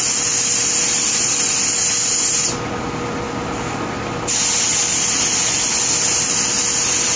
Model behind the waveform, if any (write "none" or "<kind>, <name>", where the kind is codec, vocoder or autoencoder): none